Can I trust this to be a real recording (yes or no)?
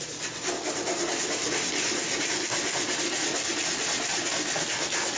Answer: yes